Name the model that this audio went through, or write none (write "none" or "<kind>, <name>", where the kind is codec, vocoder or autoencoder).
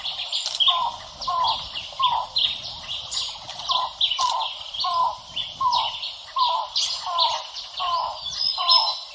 none